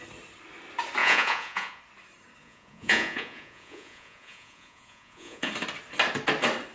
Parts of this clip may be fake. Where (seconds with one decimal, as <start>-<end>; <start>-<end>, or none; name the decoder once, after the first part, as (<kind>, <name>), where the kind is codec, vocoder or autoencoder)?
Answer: 1.0-1.8 (vocoder, Vocos); 2.4-5.5